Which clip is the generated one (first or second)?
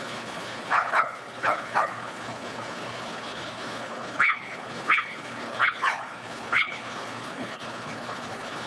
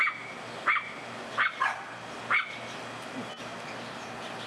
first